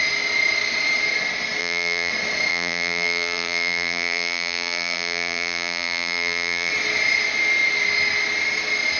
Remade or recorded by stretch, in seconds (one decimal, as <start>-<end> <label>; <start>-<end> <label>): 0.0-1.6 recorded; 1.6-2.1 remade; 2.1-2.5 recorded; 2.5-6.7 remade; 6.7-9.0 recorded